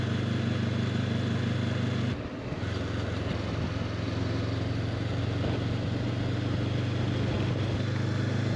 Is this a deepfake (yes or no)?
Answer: no